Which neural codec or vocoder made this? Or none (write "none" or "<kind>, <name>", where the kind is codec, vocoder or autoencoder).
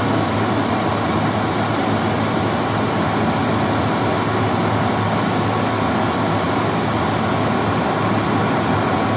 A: none